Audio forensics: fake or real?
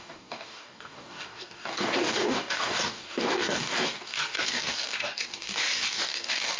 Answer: fake